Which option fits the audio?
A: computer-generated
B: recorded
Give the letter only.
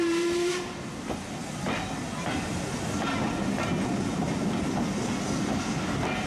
B